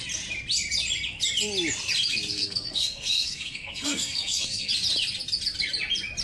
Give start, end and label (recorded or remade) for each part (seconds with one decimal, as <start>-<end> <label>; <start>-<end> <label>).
0.0-2.3 recorded; 2.3-4.7 remade; 4.7-6.2 recorded

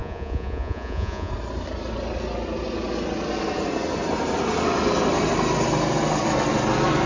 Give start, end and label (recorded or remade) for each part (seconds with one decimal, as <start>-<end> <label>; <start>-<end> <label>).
0.0-1.3 remade; 1.3-7.1 recorded

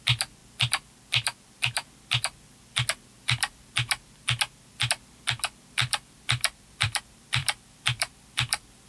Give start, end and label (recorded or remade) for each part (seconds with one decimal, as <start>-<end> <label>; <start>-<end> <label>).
0.0-5.8 recorded; 5.8-7.0 remade; 7.0-7.4 recorded; 7.4-8.9 remade

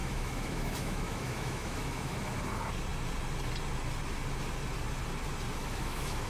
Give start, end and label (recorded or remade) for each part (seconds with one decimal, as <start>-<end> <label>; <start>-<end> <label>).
0.0-2.4 remade; 2.4-5.6 recorded; 5.6-6.3 remade